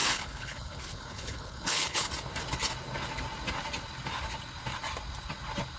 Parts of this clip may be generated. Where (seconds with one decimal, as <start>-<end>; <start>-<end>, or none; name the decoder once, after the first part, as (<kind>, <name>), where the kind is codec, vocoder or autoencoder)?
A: 0.0-2.1 (codec, HILCodec)